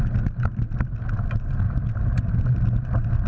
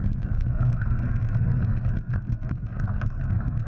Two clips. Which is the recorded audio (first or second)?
first